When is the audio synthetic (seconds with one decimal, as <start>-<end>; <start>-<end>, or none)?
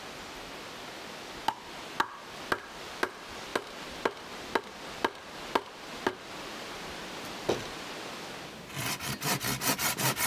none